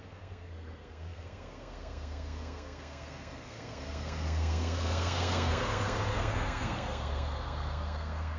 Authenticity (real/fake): fake